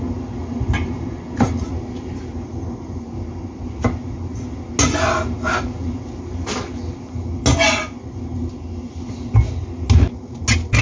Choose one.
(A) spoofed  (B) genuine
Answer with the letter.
B